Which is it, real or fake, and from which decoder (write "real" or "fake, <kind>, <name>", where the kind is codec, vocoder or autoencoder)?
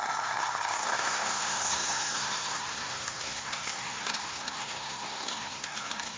fake, codec, SNAC